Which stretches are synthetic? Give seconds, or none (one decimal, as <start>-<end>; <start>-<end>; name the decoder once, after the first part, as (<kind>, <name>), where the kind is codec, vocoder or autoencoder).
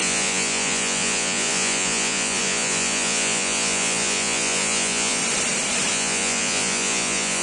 0.0-5.2 (vocoder, Vocos); 5.9-7.4